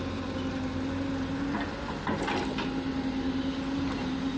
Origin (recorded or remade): recorded